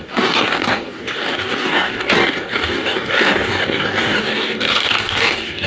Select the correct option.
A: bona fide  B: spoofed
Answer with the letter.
B